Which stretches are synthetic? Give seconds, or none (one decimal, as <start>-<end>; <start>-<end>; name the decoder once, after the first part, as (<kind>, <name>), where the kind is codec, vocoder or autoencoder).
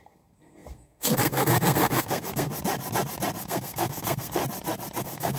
0.0-2.5 (codec, SNAC); 3.4-4.4; 5.0-5.4